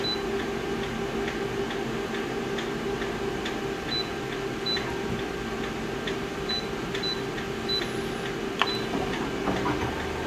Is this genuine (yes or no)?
yes